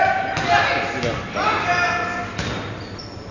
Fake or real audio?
real